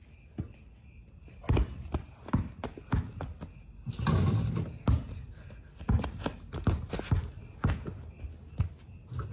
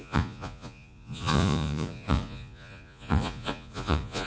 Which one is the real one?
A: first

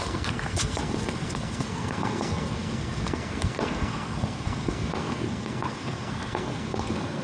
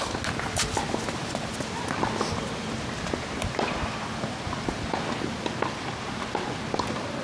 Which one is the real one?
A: second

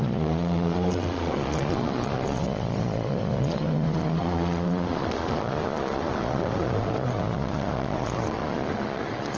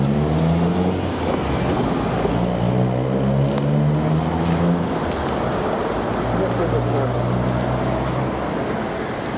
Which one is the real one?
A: second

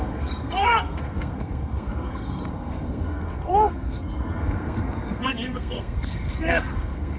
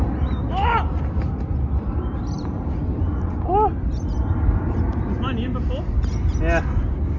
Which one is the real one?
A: second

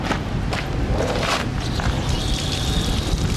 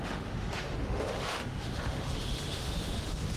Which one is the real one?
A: first